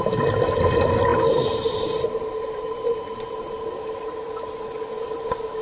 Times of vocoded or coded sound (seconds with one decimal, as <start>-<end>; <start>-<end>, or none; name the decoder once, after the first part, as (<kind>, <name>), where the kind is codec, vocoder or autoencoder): 1.1-3.8 (vocoder, BigVGAN v2)